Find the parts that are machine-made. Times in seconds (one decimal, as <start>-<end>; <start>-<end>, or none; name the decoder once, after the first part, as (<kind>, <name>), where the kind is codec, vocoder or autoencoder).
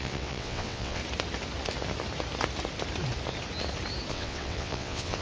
0.0-1.0 (vocoder, WaveNeXt); 4.1-5.2